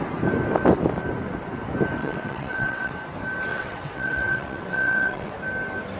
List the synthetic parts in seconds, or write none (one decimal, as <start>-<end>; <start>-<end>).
2.0-2.9; 3.5-5.3